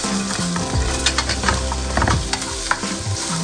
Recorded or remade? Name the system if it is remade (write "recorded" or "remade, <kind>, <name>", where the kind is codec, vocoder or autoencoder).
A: recorded